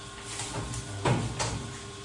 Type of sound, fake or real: real